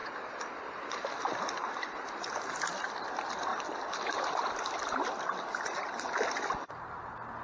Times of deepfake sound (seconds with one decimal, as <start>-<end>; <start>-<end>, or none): 0.0-1.6